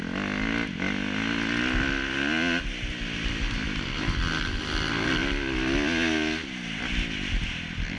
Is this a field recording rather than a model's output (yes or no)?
yes